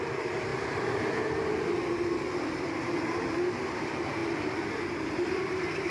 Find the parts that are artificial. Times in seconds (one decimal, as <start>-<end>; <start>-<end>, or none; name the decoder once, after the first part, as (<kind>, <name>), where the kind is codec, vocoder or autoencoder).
0.0-4.2 (vocoder, BigVGAN v2); 4.7-5.9